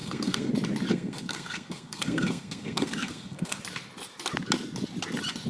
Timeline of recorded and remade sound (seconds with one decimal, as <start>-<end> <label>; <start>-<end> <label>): 0.0-0.5 remade; 0.5-0.9 recorded; 0.9-3.6 remade; 3.6-5.5 recorded